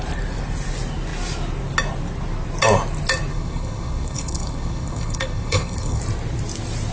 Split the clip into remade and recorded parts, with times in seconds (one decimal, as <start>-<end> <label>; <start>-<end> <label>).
0.0-3.3 recorded; 3.3-6.0 remade; 6.0-6.9 recorded